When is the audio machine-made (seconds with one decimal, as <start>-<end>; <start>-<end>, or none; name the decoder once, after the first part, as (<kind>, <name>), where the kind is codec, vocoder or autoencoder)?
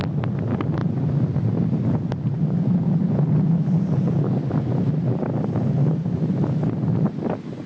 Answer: none